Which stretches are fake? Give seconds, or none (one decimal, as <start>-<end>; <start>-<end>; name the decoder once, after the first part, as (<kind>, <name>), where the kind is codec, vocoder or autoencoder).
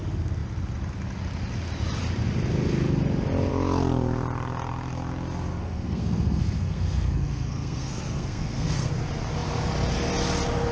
5.5-8.9 (codec, SNAC)